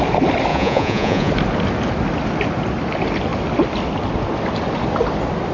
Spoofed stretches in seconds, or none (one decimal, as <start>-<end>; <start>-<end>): 0.5-1.3